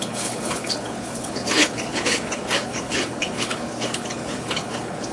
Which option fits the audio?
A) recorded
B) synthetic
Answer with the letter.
B